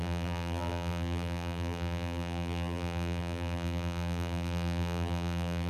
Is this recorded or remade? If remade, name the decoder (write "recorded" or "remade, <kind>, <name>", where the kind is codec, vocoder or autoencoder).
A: remade, vocoder, BigVGAN v2